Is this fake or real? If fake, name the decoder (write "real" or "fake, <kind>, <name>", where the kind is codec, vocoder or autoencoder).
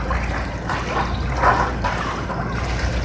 fake, vocoder, BigVGAN v2